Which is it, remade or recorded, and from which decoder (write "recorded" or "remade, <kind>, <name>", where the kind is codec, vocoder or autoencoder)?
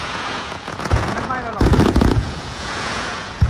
remade, vocoder, Vocos